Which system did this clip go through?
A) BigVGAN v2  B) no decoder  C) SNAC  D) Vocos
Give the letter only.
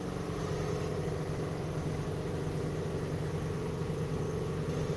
B